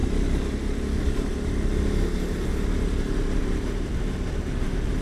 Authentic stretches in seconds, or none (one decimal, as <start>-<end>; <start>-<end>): 0.0-3.0; 3.4-4.6